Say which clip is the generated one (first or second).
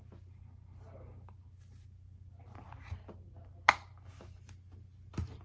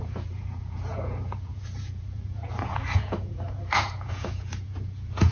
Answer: second